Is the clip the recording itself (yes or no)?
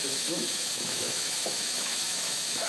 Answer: no